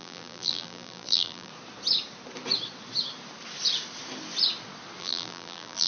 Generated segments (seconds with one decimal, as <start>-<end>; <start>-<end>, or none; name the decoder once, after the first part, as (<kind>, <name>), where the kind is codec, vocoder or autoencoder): 0.0-1.5 (vocoder, BigVGAN v2); 5.0-5.9